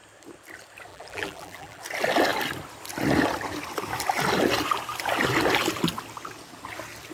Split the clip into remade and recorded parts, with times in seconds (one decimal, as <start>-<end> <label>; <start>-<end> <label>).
0.0-0.9 recorded; 0.9-1.8 remade; 1.8-7.1 recorded